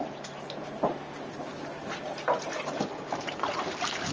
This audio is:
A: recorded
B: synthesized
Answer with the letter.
A